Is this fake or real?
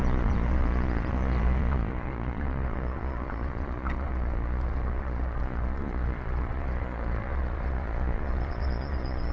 fake